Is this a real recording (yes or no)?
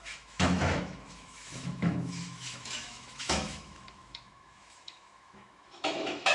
no